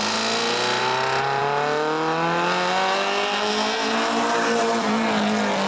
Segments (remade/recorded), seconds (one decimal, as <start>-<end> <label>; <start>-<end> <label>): 0.0-5.7 recorded